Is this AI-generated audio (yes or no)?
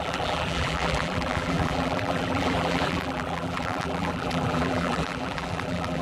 yes